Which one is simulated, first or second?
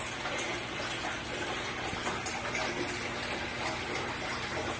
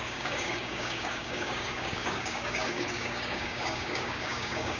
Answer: second